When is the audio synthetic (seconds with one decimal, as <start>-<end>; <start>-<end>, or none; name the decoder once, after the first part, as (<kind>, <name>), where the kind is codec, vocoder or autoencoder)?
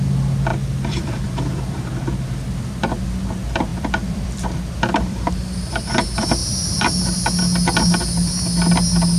0.5-2.0 (vocoder, BigVGAN v2); 3.7-5.3; 6.4-7.0